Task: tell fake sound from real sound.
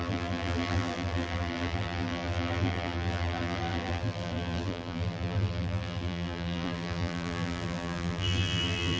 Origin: fake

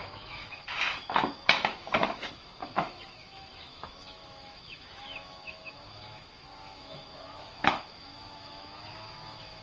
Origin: fake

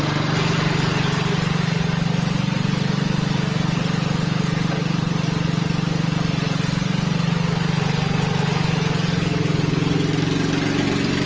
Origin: real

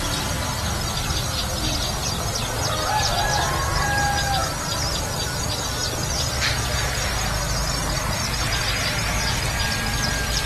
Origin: real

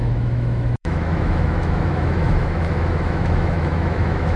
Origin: fake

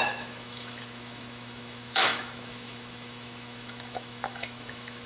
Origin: fake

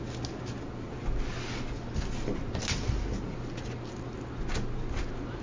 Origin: real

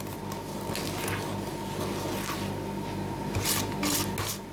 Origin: real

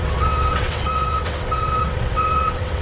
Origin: fake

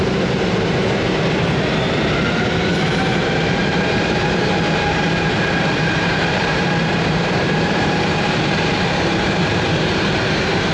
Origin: fake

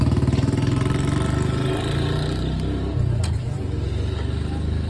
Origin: real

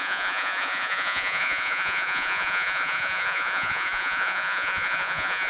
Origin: fake